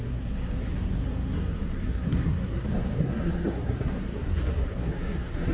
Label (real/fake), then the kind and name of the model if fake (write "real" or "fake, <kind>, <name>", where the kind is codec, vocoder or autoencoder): fake, codec, SNAC